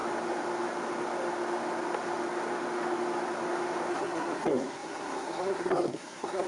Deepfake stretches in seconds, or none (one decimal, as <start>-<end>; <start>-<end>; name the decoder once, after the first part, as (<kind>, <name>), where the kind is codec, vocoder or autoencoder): 3.9-6.5 (codec, SNAC)